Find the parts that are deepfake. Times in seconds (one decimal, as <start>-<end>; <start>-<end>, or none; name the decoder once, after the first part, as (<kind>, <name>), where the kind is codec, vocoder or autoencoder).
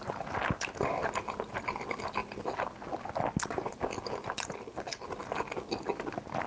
none